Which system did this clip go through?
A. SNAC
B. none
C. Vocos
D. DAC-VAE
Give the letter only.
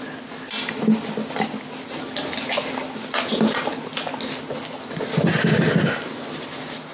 B